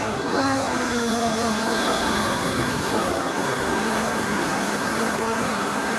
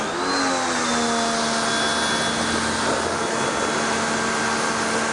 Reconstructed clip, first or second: first